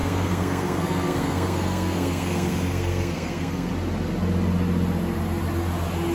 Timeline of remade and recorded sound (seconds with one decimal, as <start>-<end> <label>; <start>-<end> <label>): 0.0-3.7 remade; 3.7-6.1 recorded